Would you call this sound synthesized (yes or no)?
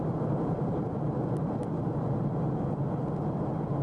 no